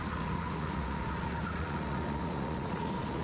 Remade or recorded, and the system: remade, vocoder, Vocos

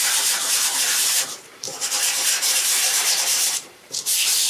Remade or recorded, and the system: remade, vocoder, BigVGAN v2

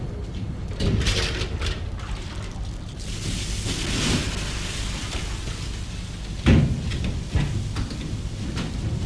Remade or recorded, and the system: recorded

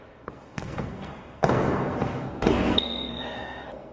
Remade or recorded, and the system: remade, codec, SNAC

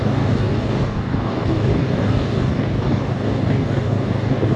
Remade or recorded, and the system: remade, codec, DAC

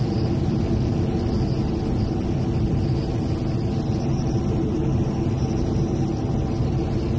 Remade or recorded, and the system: recorded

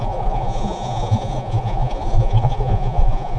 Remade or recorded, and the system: remade, vocoder, Vocos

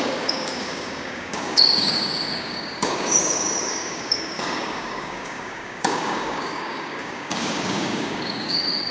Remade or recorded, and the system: remade, codec, DAC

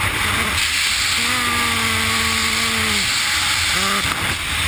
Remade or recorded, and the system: recorded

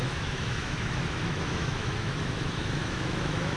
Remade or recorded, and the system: remade, autoencoder, DAC-VAE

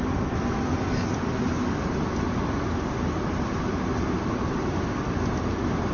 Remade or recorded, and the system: recorded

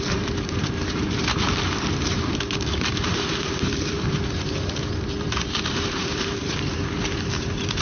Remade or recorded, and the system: remade, vocoder, BigVGAN v2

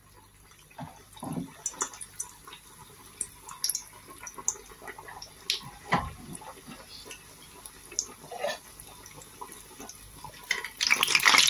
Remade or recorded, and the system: recorded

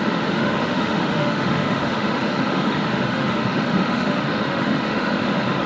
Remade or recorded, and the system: remade, autoencoder, DAC-VAE